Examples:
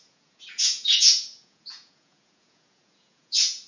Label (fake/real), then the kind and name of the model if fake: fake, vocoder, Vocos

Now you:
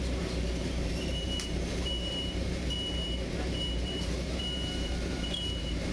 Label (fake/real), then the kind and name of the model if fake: fake, vocoder, BigVGAN v2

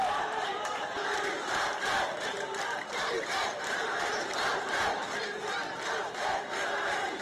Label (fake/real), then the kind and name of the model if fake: fake, vocoder, BigVGAN v2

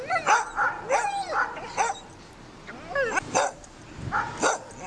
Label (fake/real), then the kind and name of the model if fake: real